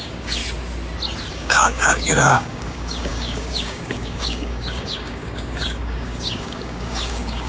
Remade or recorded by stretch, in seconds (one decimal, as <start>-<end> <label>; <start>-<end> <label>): 0.0-0.4 remade; 0.4-1.3 recorded; 1.3-7.5 remade